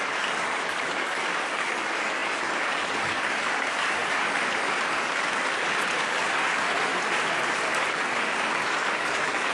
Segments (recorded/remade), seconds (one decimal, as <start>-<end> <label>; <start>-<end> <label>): 0.0-6.9 remade; 6.9-7.9 recorded; 7.9-9.5 remade